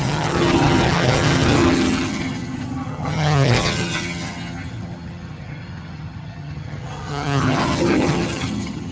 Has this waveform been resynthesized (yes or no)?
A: yes